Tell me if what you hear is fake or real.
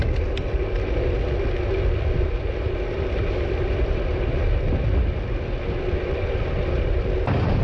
real